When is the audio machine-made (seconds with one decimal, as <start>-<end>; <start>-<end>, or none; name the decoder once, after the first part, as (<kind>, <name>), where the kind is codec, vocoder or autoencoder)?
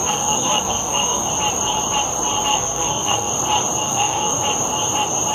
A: 0.0-1.3 (codec, SNAC); 2.5-3.3; 3.8-4.4